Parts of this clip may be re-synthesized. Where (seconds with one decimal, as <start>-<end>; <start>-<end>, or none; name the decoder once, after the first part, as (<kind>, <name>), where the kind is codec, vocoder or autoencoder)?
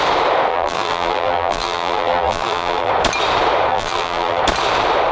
0.5-2.9 (vocoder, BigVGAN v2); 3.7-4.4